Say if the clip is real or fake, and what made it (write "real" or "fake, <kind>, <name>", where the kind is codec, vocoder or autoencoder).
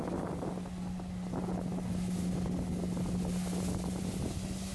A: real